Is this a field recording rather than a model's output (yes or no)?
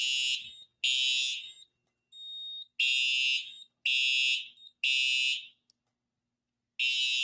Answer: yes